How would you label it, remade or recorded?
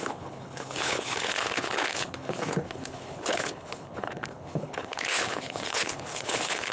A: remade